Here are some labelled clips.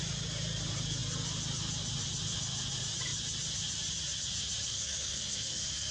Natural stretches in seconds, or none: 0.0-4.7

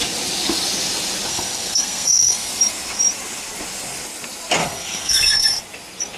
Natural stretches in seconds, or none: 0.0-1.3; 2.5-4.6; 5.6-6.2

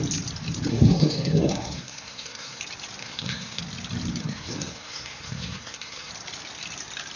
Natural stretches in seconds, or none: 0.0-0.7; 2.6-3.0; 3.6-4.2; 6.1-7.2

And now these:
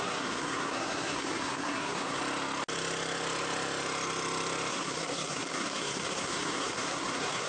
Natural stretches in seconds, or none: 2.2-4.7